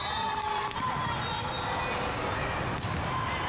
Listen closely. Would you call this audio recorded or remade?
recorded